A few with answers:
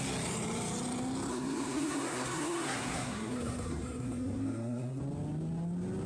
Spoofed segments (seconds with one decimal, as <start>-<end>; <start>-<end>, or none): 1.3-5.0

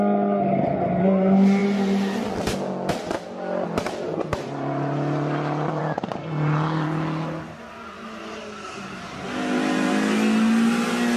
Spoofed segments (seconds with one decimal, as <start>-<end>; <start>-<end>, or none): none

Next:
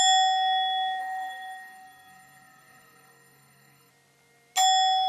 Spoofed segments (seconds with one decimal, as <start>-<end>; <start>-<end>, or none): 1.0-3.9